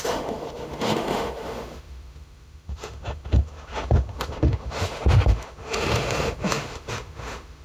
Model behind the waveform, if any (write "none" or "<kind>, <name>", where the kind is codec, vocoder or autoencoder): autoencoder, DAC-VAE